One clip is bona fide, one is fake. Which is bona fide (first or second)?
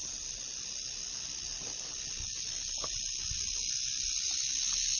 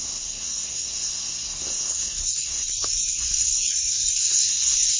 first